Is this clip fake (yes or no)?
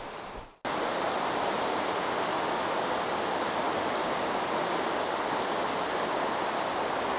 no